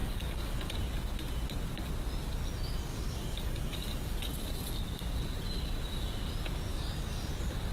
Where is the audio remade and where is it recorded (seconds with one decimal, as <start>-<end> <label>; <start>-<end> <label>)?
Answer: 0.0-0.7 remade; 0.7-2.9 recorded; 2.9-4.2 remade; 4.2-6.7 recorded; 6.7-7.3 remade; 7.3-7.7 recorded

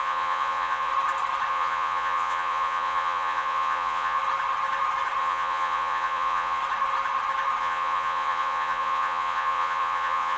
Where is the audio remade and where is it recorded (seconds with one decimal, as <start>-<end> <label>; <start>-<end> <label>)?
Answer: 0.0-0.9 remade; 0.9-1.5 recorded; 1.5-4.2 remade; 4.2-5.2 recorded; 5.2-6.6 remade; 6.6-7.6 recorded; 7.6-10.4 remade

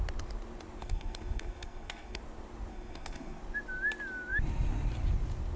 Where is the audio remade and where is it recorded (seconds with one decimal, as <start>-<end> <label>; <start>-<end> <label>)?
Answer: 0.0-0.8 recorded; 0.8-2.2 remade; 2.2-2.7 recorded; 2.7-3.4 remade; 3.4-5.6 recorded

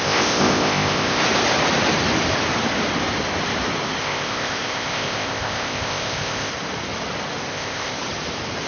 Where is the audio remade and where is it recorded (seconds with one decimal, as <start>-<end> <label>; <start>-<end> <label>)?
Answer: 0.0-1.2 remade; 1.2-4.0 recorded; 4.0-6.5 remade; 6.5-7.5 recorded; 7.5-7.9 remade; 7.9-8.7 recorded